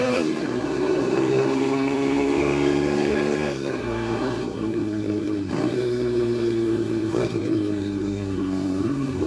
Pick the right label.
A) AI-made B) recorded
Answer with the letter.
A